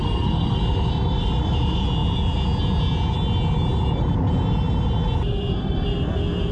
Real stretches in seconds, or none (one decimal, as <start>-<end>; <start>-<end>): 0.6-6.5